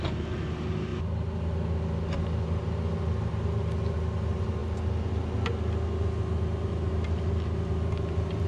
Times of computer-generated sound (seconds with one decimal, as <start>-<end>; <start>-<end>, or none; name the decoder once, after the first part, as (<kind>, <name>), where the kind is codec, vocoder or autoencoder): none

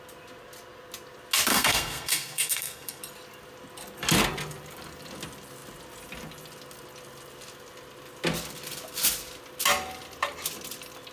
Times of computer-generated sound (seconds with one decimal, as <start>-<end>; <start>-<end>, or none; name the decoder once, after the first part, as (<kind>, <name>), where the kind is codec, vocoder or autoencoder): 1.5-3.0 (codec, SNAC)